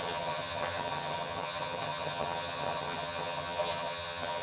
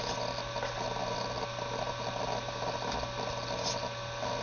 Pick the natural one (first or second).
second